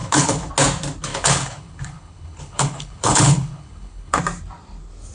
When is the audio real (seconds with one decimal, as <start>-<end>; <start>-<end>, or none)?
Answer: 0.5-1.1; 4.2-5.1